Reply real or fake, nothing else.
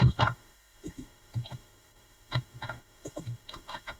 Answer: fake